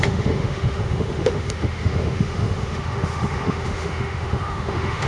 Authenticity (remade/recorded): remade